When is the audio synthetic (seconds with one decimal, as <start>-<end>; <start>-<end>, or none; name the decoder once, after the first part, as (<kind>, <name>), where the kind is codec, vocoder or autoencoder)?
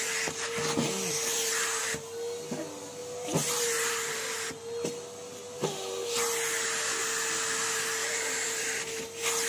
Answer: 0.6-1.8 (vocoder, BigVGAN v2); 3.0-4.5; 8.0-9.0